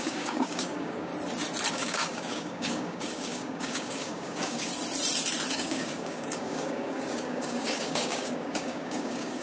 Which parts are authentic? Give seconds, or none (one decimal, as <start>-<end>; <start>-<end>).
1.1-1.7; 4.7-5.5